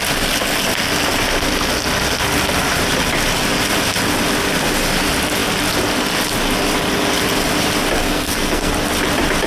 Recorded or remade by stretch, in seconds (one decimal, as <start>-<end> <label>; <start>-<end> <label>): 0.0-8.0 recorded; 8.0-8.7 remade; 8.7-9.5 recorded